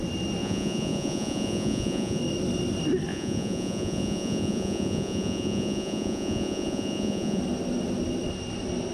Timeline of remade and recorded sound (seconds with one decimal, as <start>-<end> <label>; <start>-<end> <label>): 0.0-0.4 recorded; 0.4-2.2 remade; 2.2-3.1 recorded; 3.1-7.4 remade; 7.4-8.9 recorded